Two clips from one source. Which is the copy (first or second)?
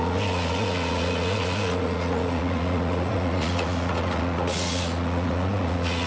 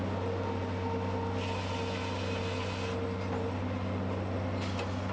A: first